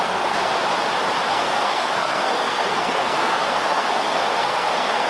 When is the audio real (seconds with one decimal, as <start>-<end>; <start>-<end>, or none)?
0.5-1.3